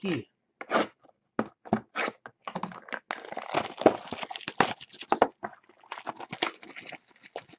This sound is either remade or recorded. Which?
recorded